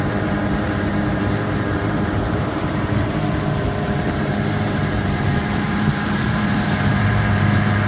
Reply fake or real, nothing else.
fake